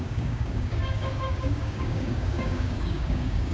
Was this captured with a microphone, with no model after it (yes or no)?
no